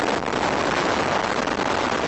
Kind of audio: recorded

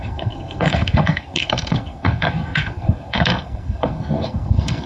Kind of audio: remade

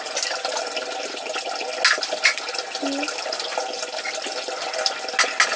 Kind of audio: recorded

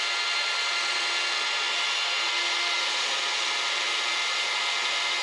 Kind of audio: recorded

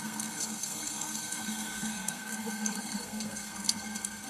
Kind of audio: remade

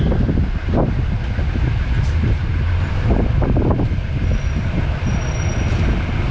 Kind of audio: recorded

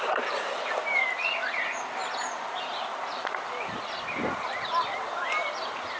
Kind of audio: recorded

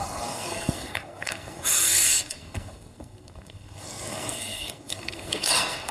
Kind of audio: remade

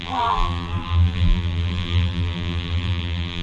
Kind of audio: remade